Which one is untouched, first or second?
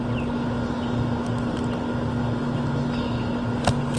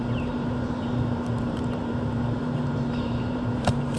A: first